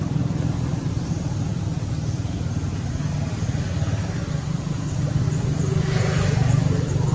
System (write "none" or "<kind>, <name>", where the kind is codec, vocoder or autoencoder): none